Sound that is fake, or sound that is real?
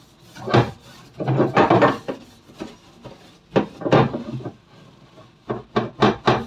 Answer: real